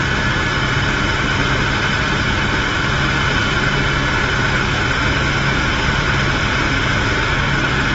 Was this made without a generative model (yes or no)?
yes